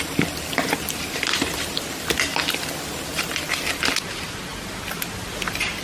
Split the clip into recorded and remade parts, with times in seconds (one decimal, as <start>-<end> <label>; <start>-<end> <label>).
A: 0.0-2.3 remade; 2.3-3.5 recorded; 3.5-4.5 remade; 4.5-5.3 recorded; 5.3-5.8 remade